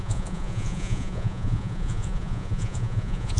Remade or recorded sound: remade